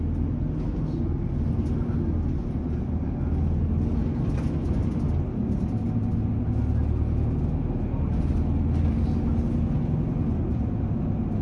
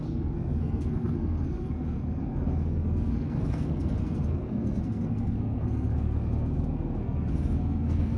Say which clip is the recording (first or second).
first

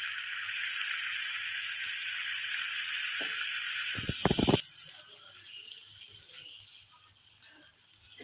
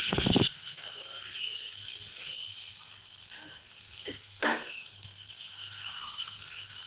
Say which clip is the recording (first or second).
first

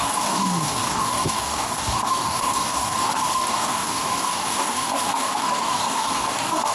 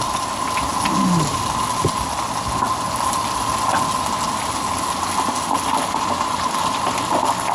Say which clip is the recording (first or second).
second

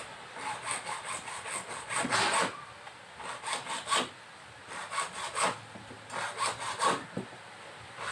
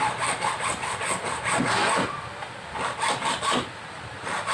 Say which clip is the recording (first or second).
first